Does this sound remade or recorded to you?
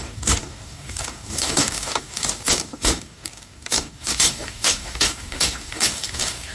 remade